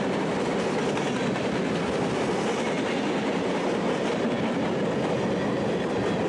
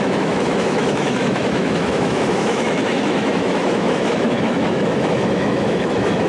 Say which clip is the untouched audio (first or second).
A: first